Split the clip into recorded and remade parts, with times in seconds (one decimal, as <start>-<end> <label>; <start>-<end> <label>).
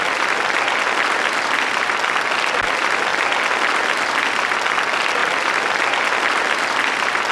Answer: 0.0-7.3 recorded